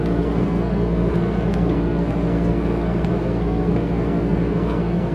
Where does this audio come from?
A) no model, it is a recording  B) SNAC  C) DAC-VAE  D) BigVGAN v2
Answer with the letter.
B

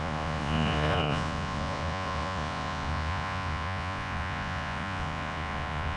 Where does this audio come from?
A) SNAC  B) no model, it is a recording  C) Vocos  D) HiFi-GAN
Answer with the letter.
C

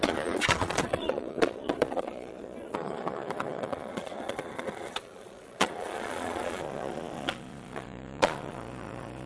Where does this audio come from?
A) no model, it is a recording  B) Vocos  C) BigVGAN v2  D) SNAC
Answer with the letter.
B